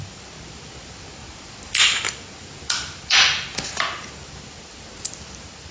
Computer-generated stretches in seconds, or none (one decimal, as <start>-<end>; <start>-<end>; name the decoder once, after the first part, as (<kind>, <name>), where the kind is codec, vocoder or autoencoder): none